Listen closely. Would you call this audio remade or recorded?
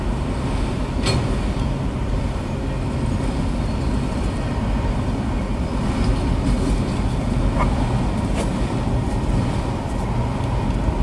recorded